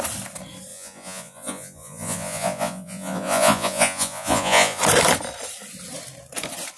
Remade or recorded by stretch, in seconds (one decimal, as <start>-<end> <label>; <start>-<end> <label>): 0.0-0.7 recorded; 0.7-4.8 remade; 4.8-6.8 recorded